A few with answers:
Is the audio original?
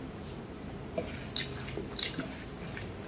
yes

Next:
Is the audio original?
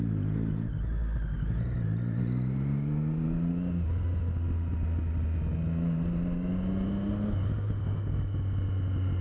yes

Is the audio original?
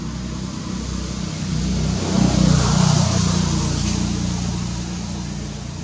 yes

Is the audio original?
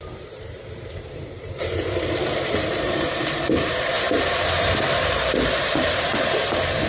no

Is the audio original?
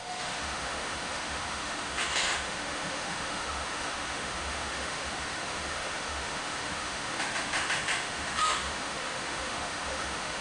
no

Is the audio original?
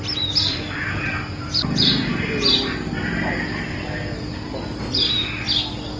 yes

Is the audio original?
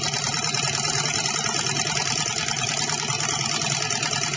yes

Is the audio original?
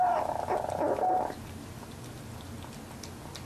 yes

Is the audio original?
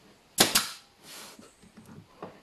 yes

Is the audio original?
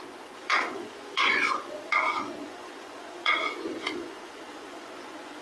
no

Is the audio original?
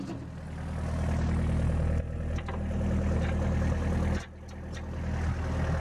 yes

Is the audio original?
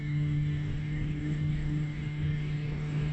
no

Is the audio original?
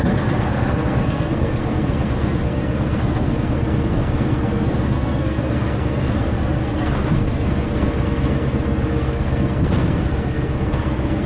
no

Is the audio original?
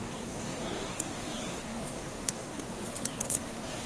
no